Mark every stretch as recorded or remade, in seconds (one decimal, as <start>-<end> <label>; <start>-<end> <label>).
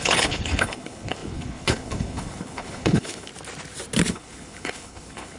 0.0-3.3 remade; 3.3-4.1 recorded; 4.1-5.4 remade